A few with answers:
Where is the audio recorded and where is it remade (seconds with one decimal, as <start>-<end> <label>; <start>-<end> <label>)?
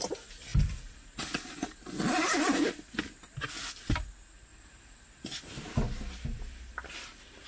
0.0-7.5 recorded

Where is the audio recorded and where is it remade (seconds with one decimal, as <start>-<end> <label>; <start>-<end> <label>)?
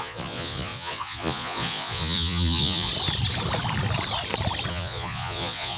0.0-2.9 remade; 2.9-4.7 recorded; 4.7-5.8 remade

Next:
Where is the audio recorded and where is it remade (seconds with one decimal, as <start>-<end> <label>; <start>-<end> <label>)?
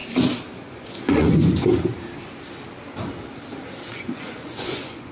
0.0-0.7 recorded; 0.7-1.7 remade; 1.7-3.9 recorded; 3.9-5.1 remade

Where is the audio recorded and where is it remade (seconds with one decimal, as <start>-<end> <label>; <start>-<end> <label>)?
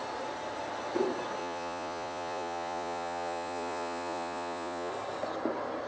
0.0-1.4 recorded; 1.4-4.9 remade; 4.9-5.9 recorded